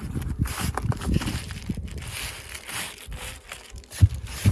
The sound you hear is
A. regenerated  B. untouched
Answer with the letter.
B